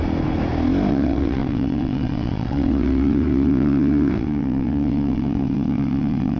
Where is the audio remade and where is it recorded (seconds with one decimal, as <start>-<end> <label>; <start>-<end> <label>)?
0.0-0.9 recorded; 0.9-6.4 remade